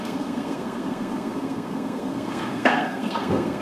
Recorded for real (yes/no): no